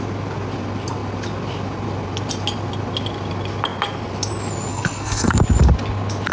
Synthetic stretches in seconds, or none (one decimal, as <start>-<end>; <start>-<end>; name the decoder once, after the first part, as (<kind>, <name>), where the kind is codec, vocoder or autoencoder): 4.7-5.4 (codec, SNAC)